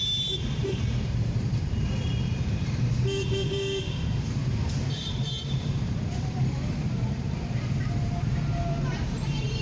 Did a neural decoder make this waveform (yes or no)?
yes